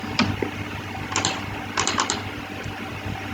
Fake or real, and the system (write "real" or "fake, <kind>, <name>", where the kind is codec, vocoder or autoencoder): real